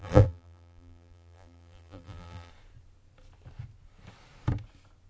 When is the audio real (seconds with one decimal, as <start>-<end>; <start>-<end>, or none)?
2.5-5.1